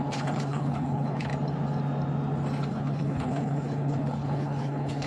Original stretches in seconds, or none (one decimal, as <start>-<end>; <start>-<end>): 1.3-2.7